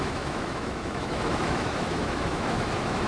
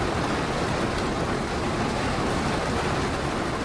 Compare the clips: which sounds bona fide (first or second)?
second